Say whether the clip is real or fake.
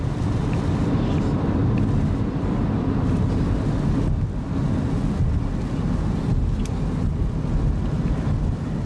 real